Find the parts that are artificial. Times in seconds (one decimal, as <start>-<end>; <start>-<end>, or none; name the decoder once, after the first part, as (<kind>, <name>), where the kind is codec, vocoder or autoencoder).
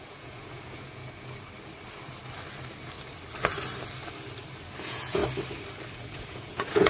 0.0-1.0 (vocoder, Vocos); 4.8-5.2; 5.9-6.9